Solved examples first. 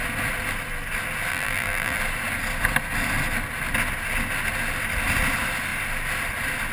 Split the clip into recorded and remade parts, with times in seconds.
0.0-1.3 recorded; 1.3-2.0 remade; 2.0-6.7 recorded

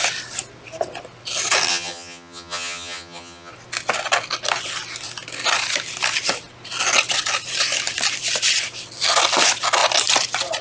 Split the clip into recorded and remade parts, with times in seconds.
0.0-1.7 recorded; 1.7-3.5 remade; 3.5-10.6 recorded

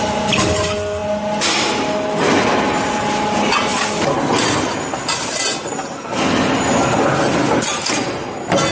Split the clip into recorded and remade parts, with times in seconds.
0.0-8.7 recorded